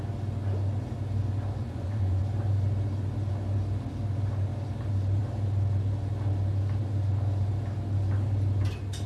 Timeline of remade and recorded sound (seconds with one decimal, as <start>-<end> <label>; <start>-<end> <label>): 0.0-1.6 recorded; 1.6-2.2 remade; 2.2-9.1 recorded